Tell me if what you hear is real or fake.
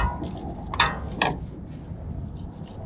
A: real